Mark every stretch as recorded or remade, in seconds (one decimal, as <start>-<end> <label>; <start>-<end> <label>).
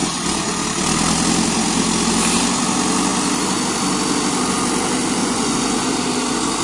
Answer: 0.0-0.6 remade; 0.6-5.2 recorded; 5.2-5.9 remade; 5.9-6.6 recorded